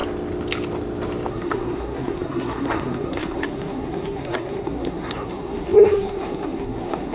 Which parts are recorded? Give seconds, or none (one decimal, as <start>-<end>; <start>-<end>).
0.0-1.3